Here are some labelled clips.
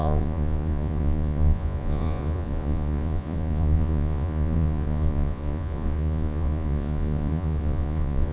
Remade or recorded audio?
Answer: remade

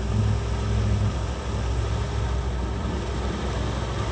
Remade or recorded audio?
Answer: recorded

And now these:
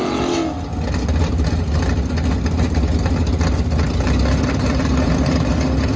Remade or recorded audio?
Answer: recorded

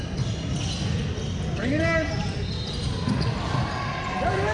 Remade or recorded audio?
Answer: recorded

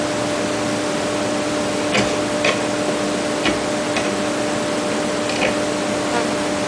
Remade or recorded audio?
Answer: recorded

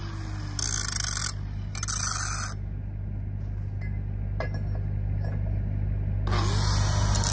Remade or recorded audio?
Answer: recorded